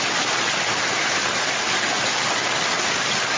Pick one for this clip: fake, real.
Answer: real